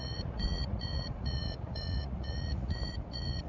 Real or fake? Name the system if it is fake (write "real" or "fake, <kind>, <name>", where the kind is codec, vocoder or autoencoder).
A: fake, vocoder, Vocos